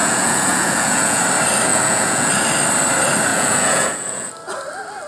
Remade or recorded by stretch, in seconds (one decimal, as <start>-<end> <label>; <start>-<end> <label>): 0.0-1.2 remade; 1.2-1.7 recorded; 1.7-2.3 remade; 2.3-3.3 recorded; 3.3-4.3 remade; 4.3-5.1 recorded